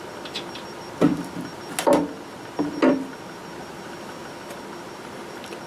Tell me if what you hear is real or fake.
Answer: real